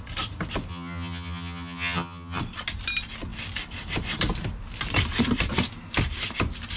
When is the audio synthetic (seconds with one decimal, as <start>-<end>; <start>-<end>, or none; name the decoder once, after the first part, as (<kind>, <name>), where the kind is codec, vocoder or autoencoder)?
0.7-2.4 (vocoder, HiFi-GAN)